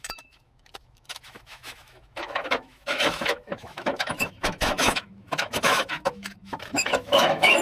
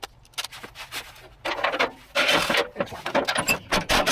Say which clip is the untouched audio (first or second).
second